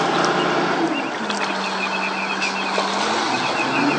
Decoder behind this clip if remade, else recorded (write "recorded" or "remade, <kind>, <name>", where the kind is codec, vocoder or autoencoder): recorded